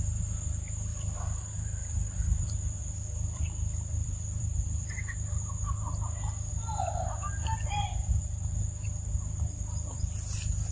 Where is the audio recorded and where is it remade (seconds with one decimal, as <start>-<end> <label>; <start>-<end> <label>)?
0.0-0.9 recorded; 0.9-1.4 remade; 1.4-1.8 recorded; 1.8-3.4 remade; 3.4-4.0 recorded; 4.0-4.9 remade; 4.9-10.7 recorded